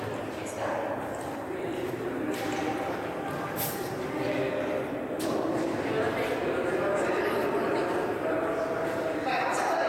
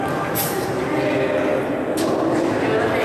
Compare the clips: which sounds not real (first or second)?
first